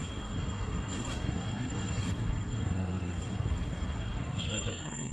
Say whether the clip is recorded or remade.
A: remade